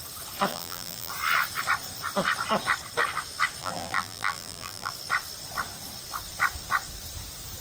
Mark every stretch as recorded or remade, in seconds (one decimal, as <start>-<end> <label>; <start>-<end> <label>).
0.0-0.5 recorded; 0.5-1.1 remade; 1.1-3.6 recorded; 3.6-4.9 remade; 4.9-7.6 recorded